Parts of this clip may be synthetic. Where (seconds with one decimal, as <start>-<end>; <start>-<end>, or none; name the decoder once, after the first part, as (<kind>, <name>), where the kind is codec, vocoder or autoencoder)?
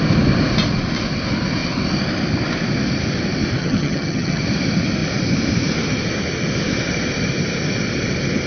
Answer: 3.6-4.4 (vocoder, HiFi-GAN)